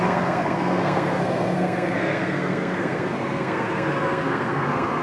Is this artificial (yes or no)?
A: yes